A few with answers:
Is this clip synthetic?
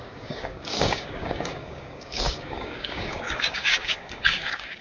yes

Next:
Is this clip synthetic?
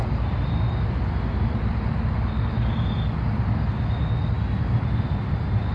no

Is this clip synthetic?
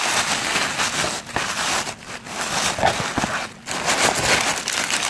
no